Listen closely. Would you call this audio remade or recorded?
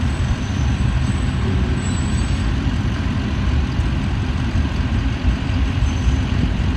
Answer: remade